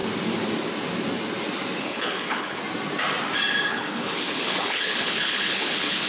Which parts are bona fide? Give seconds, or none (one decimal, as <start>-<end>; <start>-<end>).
0.0-1.8; 2.6-3.7